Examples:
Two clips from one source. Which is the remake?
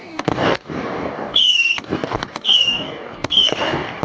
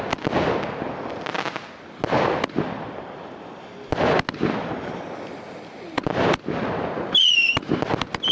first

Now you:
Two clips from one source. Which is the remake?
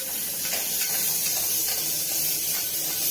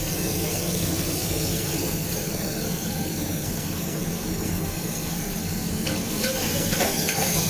second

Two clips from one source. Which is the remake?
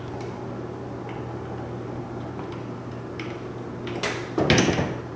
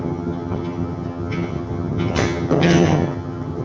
second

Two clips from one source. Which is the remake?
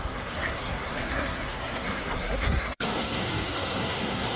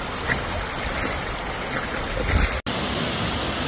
first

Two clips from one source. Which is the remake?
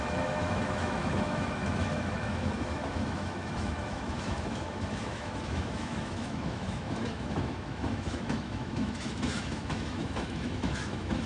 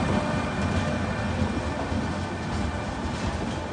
first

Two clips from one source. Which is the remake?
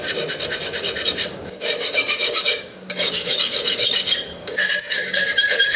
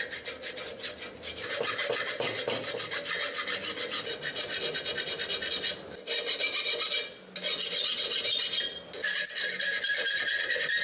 first